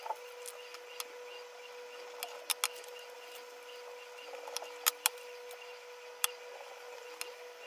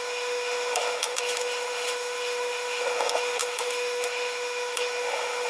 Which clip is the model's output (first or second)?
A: second